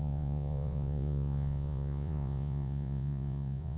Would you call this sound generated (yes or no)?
yes